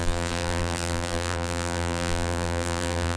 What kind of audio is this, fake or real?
fake